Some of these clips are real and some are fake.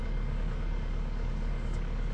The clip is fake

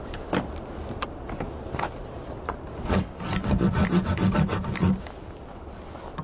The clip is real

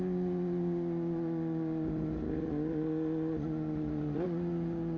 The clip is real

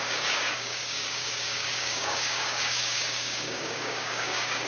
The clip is fake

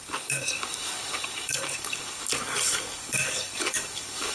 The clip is fake